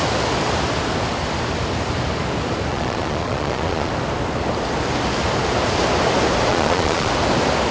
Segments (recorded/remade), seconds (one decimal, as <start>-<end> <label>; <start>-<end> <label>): 0.0-2.7 recorded; 2.7-3.9 remade; 3.9-6.5 recorded; 6.5-7.1 remade; 7.1-7.7 recorded